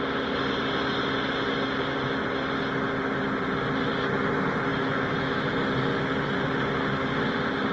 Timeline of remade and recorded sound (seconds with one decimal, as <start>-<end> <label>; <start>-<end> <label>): 0.0-4.7 recorded; 4.7-5.4 remade; 5.4-7.7 recorded